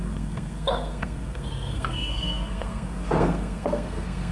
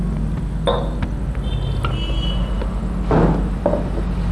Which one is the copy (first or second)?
first